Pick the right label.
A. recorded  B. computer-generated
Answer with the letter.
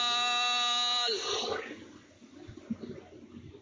A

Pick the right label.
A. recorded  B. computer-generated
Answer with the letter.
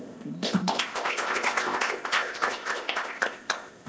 B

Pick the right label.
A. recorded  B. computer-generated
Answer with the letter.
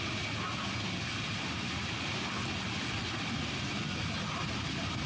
A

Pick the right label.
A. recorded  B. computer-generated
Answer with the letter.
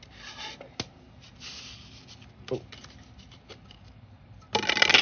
A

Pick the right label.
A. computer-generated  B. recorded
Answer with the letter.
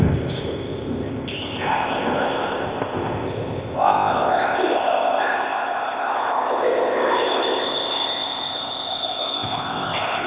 A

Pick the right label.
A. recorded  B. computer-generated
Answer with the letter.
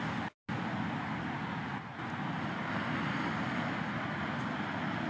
A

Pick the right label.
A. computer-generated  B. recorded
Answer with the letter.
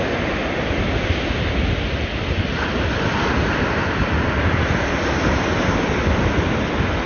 B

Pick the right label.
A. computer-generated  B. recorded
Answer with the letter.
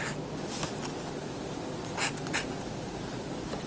B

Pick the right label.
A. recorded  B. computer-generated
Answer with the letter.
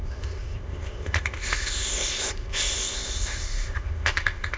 B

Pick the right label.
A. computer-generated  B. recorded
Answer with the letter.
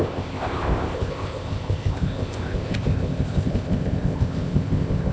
A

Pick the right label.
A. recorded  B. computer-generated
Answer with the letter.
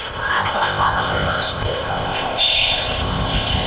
B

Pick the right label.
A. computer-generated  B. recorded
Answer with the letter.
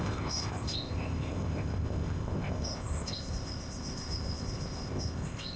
A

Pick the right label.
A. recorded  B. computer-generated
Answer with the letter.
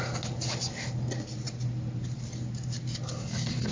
A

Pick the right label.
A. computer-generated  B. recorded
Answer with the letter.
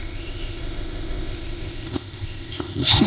A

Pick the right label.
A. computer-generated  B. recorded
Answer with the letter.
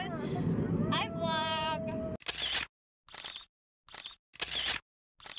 B